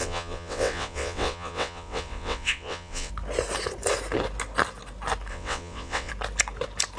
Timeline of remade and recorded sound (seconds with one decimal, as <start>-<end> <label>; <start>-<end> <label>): 0.0-3.1 remade; 3.1-5.3 recorded; 5.3-6.1 remade; 6.1-7.0 recorded